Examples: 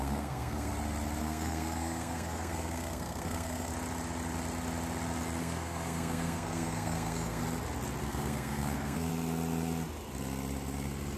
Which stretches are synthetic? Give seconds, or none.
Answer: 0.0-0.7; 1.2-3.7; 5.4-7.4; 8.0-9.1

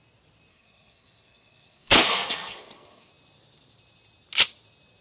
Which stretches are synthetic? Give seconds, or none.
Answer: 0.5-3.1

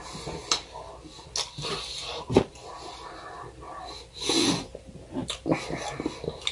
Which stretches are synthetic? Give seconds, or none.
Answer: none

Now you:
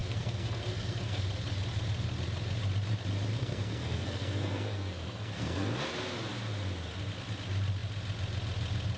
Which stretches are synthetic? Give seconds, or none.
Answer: 0.0-1.2; 3.4-5.8

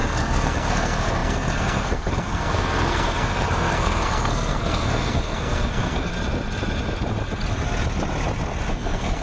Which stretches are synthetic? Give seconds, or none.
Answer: 0.0-6.1; 8.7-9.2

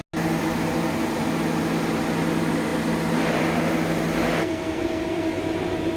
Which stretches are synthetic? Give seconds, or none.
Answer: 4.4-5.4

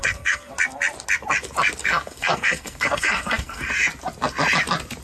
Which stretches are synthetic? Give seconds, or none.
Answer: 0.0-0.5; 1.8-3.7